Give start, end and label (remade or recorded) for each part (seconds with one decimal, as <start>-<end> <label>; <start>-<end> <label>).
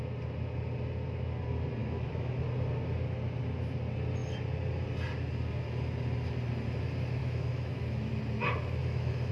0.0-1.8 recorded; 1.8-2.4 remade; 2.4-7.2 recorded; 7.2-8.1 remade; 8.1-8.8 recorded; 8.8-9.3 remade